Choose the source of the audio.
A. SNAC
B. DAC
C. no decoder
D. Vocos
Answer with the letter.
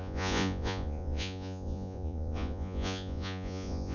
D